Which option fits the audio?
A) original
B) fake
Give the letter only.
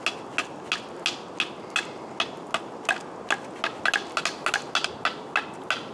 A